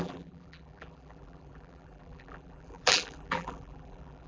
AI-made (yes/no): yes